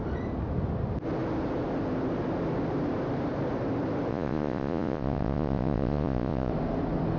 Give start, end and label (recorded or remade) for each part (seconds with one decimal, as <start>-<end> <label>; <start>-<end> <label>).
0.0-4.1 recorded; 4.1-6.5 remade; 6.5-7.2 recorded